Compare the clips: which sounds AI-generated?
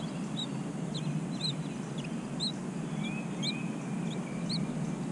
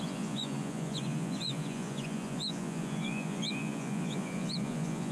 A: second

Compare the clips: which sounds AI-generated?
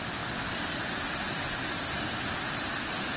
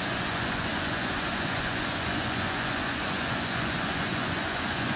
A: second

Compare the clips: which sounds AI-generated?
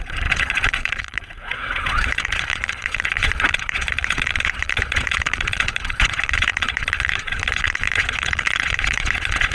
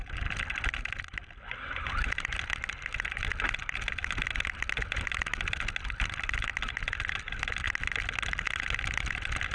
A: first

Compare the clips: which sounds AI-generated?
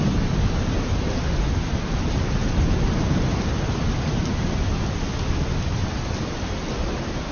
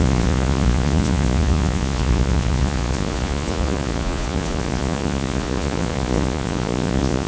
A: second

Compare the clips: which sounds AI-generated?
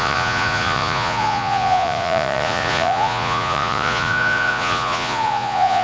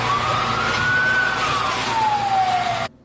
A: first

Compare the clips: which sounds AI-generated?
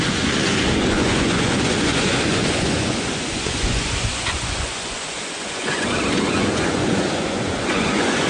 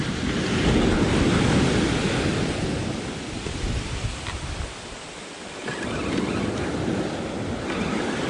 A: first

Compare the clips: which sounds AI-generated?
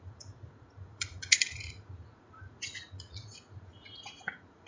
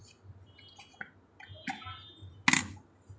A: first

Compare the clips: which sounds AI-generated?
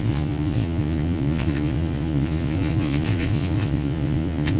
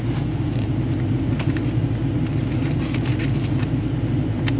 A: first